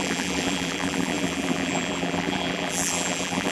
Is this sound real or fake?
fake